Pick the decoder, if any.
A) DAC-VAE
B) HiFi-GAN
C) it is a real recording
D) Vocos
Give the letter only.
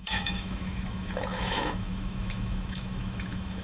A